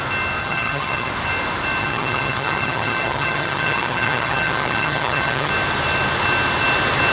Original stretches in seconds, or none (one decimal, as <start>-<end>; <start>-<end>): 0.0-0.4; 1.1-1.8; 5.5-7.1